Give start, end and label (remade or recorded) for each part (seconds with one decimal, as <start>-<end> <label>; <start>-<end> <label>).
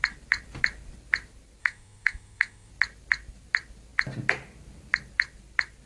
0.0-1.6 recorded; 1.6-2.7 remade; 2.7-5.9 recorded